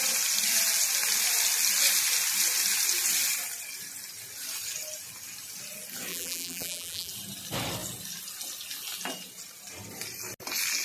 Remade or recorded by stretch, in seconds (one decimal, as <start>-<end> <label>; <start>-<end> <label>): 0.0-6.1 recorded; 6.1-7.1 remade; 7.1-10.8 recorded

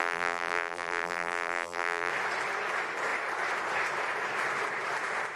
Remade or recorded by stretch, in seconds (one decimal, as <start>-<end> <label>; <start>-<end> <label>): 0.0-2.1 remade; 2.1-5.4 recorded